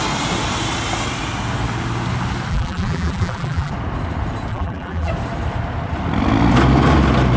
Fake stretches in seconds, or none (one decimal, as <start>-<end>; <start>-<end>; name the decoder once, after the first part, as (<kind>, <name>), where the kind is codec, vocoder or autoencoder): 2.5-3.7 (vocoder, BigVGAN v2); 4.5-5.1

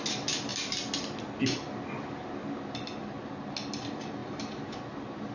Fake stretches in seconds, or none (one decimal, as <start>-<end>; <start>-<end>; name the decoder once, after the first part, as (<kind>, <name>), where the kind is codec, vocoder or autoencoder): none

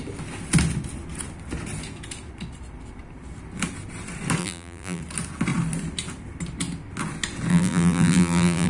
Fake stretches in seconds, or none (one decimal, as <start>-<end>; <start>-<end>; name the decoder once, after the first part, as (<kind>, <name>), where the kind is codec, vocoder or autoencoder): 4.4-5.0 (vocoder, BigVGAN v2); 7.5-8.7

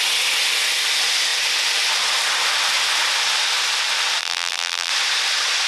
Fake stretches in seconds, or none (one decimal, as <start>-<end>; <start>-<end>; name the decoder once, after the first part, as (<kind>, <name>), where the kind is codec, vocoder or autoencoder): 4.2-4.9 (vocoder, BigVGAN v2)

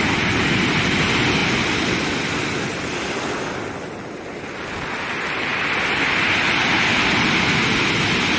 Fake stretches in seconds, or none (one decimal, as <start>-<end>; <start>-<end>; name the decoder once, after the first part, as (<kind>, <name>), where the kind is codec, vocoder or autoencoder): none

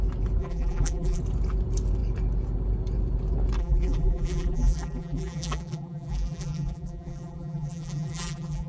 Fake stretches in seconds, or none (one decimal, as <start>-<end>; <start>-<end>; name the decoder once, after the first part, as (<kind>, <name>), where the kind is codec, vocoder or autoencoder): 0.4-1.2 (vocoder, BigVGAN v2); 3.6-8.7

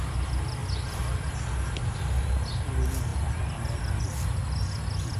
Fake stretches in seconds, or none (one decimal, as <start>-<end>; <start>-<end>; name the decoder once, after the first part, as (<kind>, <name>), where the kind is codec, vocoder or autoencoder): 3.1-4.0 (vocoder, BigVGAN v2)

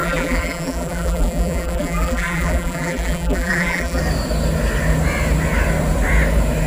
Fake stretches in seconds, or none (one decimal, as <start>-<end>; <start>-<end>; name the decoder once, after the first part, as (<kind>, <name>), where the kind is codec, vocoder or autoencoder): 0.0-4.0 (vocoder, BigVGAN v2)